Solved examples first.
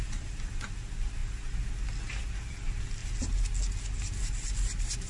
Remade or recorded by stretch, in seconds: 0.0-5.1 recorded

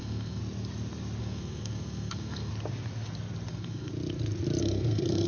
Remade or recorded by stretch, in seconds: 0.0-0.4 remade; 0.4-1.2 recorded; 1.2-2.5 remade; 2.5-3.5 recorded; 3.5-3.9 remade; 3.9-4.6 recorded; 4.6-5.3 remade

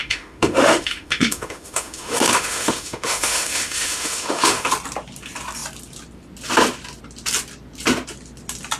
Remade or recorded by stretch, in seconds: 0.0-4.7 remade; 4.7-8.8 recorded

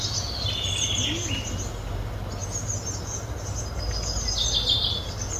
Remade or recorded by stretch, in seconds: 0.0-5.4 recorded

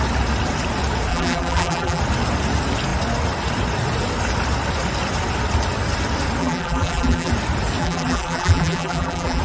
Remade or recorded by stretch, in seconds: 0.0-1.1 recorded; 1.1-2.0 remade; 2.0-6.4 recorded; 6.4-7.3 remade; 7.3-7.8 recorded; 7.8-9.4 remade

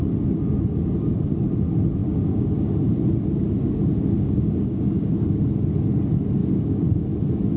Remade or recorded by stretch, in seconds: 0.0-2.0 recorded; 2.0-2.8 remade; 2.8-3.9 recorded; 3.9-5.1 remade; 5.1-6.4 recorded; 6.4-7.1 remade; 7.1-7.6 recorded

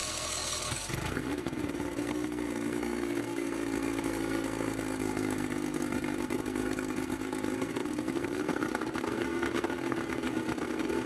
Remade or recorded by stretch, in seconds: 0.0-11.1 remade